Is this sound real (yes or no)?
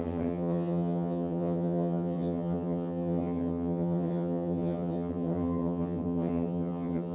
no